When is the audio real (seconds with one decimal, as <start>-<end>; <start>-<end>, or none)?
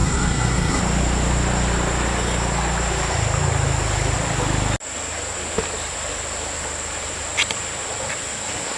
0.8-8.8